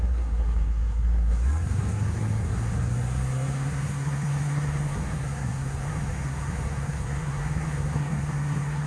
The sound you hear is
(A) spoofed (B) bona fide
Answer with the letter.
A